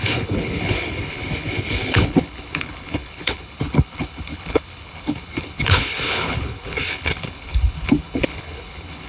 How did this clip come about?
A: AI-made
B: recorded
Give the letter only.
A